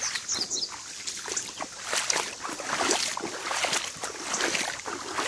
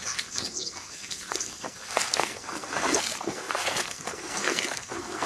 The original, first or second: first